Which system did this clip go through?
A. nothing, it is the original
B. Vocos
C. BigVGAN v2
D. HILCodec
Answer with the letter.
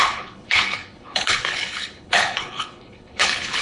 D